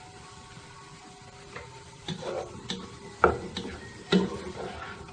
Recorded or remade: remade